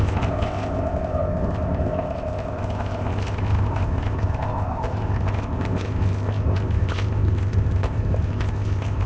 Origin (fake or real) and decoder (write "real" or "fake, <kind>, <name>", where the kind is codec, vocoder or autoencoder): fake, codec, ZipCodec